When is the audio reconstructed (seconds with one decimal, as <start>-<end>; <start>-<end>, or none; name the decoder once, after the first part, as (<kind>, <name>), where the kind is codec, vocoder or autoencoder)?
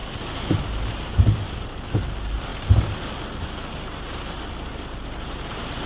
none